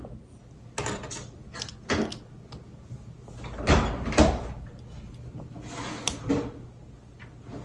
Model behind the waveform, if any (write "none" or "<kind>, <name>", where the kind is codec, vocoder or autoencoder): none